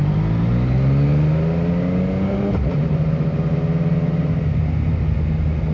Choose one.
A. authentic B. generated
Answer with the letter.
A